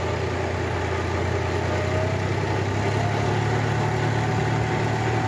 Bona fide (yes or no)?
yes